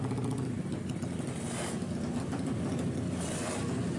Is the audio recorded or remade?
recorded